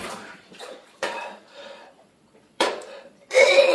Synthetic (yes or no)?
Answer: yes